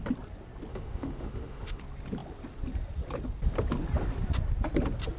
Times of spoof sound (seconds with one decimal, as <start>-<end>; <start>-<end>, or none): 0.7-1.8